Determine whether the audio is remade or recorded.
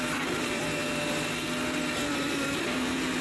remade